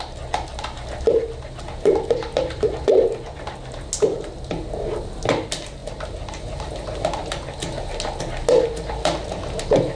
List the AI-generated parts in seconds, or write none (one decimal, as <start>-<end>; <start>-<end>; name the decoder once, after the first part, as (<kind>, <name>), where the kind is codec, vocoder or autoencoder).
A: none